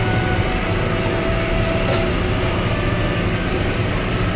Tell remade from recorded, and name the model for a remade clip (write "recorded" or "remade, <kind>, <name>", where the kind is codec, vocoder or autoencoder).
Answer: recorded